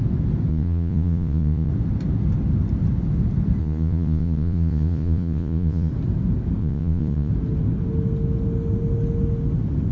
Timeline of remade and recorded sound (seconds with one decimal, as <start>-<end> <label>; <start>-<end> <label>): 0.0-0.5 recorded; 0.5-1.7 remade; 1.7-3.6 recorded; 3.6-5.9 remade; 5.9-6.6 recorded; 6.6-7.3 remade; 7.3-9.9 recorded